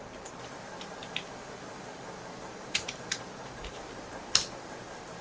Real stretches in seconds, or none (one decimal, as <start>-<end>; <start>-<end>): 0.0-1.0; 4.1-5.2